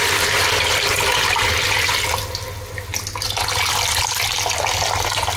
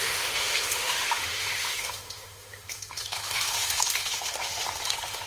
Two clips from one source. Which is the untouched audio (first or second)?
first